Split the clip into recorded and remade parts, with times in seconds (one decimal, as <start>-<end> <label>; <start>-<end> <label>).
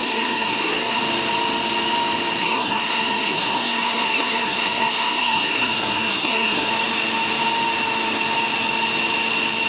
0.0-1.0 remade; 1.0-2.4 recorded; 2.4-6.7 remade; 6.7-9.7 recorded